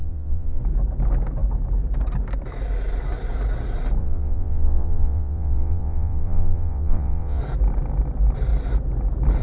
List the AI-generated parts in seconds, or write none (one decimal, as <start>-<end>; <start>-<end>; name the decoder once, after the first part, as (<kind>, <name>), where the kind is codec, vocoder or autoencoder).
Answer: 0.0-0.6 (vocoder, WaveNeXt); 4.0-7.4